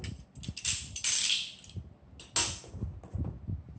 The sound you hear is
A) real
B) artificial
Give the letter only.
A